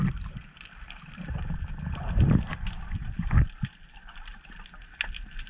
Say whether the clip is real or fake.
real